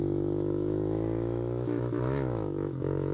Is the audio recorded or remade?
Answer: remade